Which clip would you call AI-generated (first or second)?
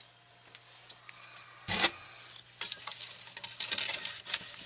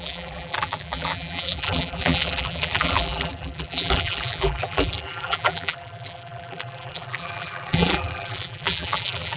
second